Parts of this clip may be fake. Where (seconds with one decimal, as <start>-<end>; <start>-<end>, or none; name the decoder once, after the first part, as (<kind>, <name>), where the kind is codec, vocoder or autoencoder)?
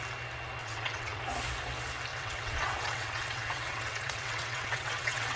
0.6-1.2 (vocoder, WaveNeXt); 2.1-5.4